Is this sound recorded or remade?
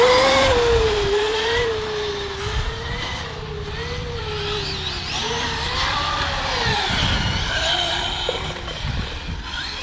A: recorded